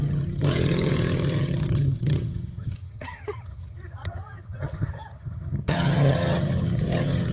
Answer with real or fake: fake